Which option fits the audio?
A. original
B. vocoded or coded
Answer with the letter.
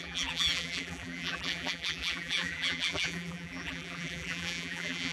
B